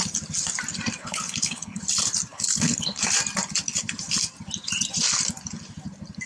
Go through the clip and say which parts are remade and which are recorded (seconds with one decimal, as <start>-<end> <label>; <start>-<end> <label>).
0.0-1.0 recorded; 1.0-1.8 remade; 1.8-2.3 recorded; 2.3-3.0 remade; 3.0-6.3 recorded